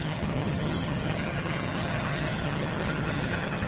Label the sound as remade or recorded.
remade